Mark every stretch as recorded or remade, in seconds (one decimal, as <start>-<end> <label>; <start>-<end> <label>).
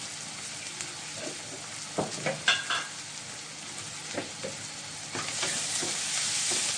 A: 0.0-6.8 recorded